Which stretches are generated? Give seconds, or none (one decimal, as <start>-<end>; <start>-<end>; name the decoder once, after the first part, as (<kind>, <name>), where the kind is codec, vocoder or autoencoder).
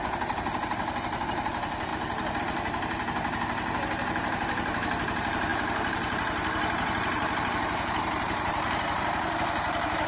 0.0-1.9 (vocoder, BigVGAN v2); 2.4-10.1